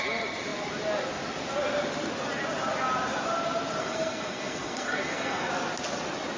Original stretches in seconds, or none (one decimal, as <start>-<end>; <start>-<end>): 0.0-3.8; 5.5-6.4